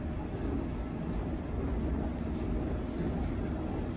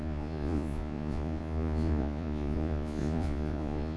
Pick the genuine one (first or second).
first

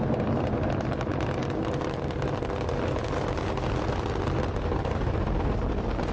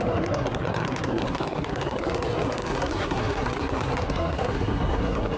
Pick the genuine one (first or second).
first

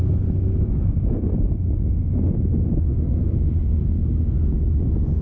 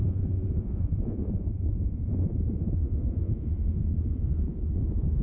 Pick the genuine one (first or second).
first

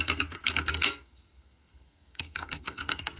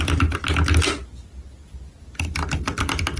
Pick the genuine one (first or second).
second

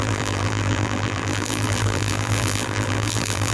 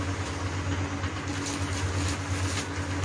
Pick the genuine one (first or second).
second